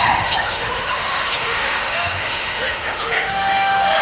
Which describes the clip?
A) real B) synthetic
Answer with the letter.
B